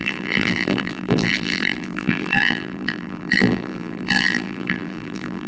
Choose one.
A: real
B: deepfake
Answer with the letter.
B